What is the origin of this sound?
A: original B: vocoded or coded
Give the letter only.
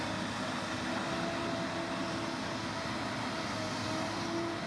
A